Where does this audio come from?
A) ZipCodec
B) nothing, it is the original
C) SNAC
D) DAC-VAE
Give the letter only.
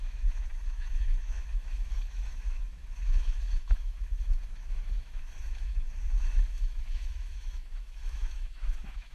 D